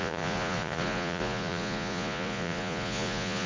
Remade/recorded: remade